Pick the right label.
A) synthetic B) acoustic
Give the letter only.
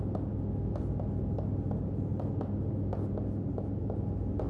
B